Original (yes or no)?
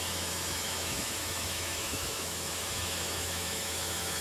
no